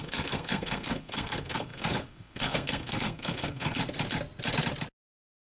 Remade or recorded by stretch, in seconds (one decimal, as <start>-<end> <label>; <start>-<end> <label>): 0.0-3.8 remade; 3.8-5.0 recorded; 5.0-5.5 remade